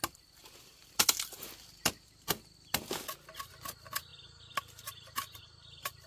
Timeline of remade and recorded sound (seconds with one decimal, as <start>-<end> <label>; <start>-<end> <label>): 0.0-6.1 recorded